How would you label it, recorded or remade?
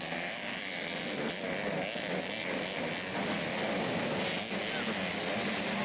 recorded